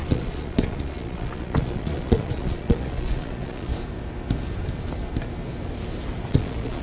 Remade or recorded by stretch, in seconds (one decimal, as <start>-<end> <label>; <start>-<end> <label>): 0.0-3.7 remade; 3.7-6.3 recorded; 6.3-6.8 remade